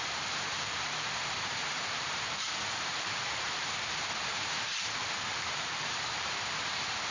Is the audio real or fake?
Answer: fake